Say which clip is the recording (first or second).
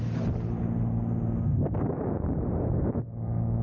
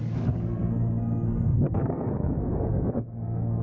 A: first